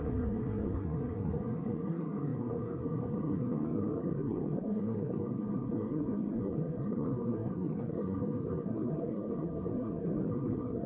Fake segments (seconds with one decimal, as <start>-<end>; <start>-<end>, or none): 0.0-10.9